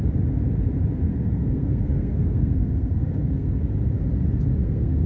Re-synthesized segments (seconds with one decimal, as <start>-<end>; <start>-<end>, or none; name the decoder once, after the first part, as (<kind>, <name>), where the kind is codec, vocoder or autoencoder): 1.1-3.6 (codec, SNAC); 4.6-5.1